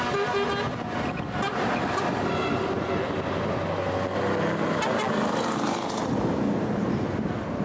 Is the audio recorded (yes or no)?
yes